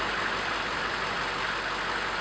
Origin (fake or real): real